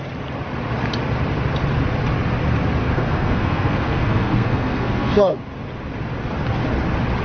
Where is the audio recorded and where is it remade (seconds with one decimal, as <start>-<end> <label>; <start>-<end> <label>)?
0.0-2.8 recorded; 2.8-5.4 remade; 5.4-7.2 recorded